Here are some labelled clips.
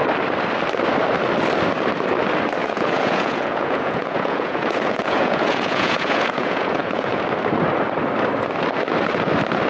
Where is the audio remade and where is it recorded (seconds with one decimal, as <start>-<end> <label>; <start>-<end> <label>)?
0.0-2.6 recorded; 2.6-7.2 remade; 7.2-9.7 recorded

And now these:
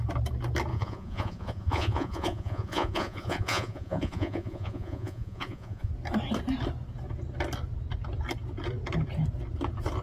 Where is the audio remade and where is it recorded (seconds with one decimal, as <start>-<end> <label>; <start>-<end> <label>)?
0.0-0.7 recorded; 0.7-5.9 remade; 5.9-10.0 recorded

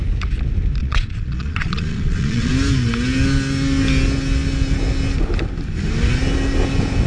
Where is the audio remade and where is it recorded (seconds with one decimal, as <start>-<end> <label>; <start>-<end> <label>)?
0.0-0.8 recorded; 0.8-2.5 remade; 2.5-7.1 recorded

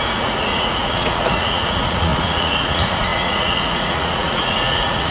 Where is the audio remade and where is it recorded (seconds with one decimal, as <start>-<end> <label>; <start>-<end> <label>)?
0.0-5.1 remade

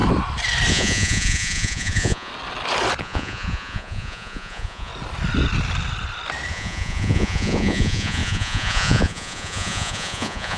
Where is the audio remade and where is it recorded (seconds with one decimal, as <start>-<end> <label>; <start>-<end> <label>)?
0.0-0.7 recorded; 0.7-2.3 remade; 2.3-3.0 recorded; 3.0-4.9 remade; 4.9-6.5 recorded; 6.5-10.6 remade

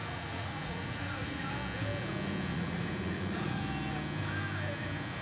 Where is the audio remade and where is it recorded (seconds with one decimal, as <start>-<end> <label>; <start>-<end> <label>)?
0.0-1.5 remade; 1.5-2.5 recorded; 2.5-3.6 remade; 3.6-5.2 recorded